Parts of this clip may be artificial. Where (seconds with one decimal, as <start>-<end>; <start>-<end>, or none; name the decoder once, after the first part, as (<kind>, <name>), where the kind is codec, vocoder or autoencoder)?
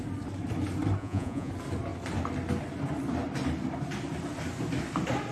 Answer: 1.0-1.5 (vocoder, Vocos)